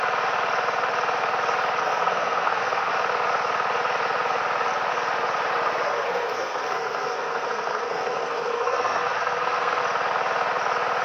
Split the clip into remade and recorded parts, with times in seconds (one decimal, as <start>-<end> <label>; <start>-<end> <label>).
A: 0.0-1.8 recorded; 1.8-2.9 remade; 2.9-5.9 recorded; 5.9-9.8 remade; 9.8-11.0 recorded